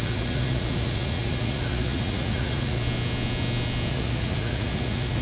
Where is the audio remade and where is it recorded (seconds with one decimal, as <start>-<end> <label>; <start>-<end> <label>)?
0.0-2.8 remade; 2.8-3.9 recorded; 3.9-5.2 remade